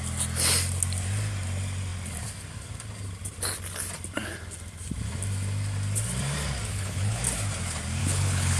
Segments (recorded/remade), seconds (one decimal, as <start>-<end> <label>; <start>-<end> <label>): 0.0-6.7 recorded; 6.7-7.2 remade; 7.2-8.0 recorded; 8.0-8.6 remade